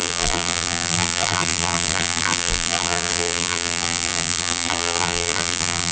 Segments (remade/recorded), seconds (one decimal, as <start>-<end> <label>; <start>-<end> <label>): 0.0-5.9 remade